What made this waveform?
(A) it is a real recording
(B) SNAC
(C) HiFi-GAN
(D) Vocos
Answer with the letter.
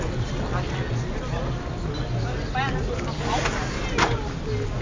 A